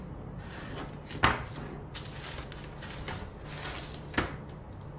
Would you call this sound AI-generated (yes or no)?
no